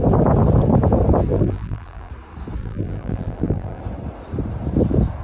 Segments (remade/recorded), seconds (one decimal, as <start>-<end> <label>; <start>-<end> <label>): 0.0-1.3 recorded; 1.3-2.1 remade; 2.1-2.6 recorded; 2.6-3.8 remade; 3.8-5.2 recorded